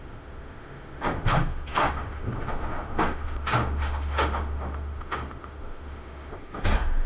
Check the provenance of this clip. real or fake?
fake